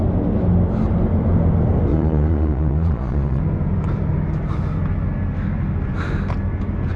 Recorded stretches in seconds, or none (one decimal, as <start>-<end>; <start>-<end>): 0.0-1.9; 3.4-7.0